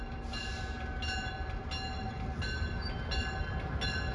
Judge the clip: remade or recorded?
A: recorded